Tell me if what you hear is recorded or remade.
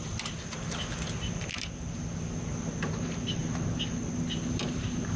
recorded